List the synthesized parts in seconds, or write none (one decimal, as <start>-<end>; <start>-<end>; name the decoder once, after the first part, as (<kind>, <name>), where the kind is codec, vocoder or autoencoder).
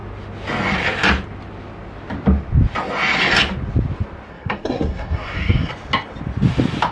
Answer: 4.3-5.7 (codec, SNAC)